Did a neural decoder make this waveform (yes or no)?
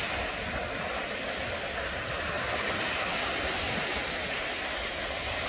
no